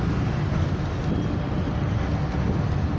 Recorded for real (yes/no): yes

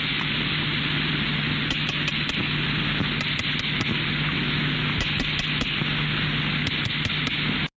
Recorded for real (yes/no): yes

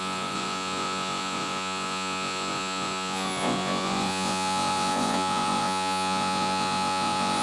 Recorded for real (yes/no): no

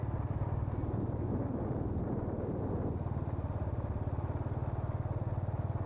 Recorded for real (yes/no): yes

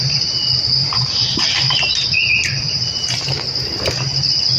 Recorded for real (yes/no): yes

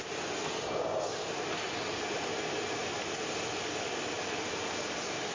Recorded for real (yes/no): yes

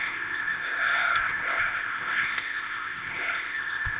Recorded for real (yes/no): no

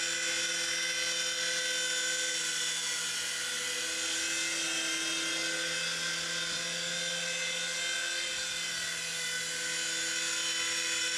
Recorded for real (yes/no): yes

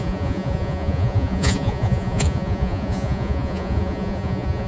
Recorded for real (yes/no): no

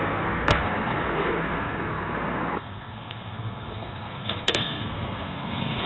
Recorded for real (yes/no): no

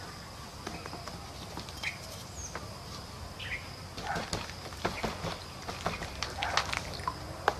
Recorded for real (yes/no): yes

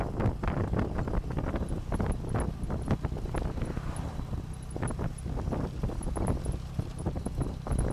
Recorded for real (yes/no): yes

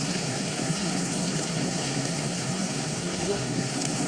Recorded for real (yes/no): no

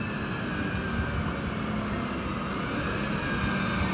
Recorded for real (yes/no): yes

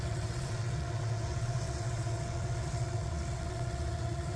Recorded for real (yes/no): no